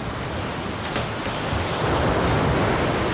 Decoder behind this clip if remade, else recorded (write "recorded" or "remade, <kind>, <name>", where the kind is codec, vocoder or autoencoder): recorded